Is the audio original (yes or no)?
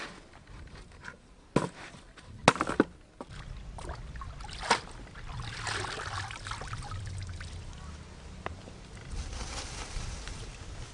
yes